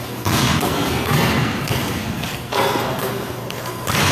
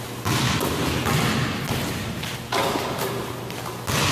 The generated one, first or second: first